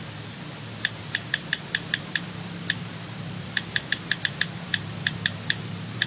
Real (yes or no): no